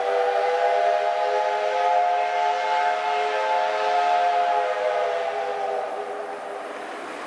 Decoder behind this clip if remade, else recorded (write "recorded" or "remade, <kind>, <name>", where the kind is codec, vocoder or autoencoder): recorded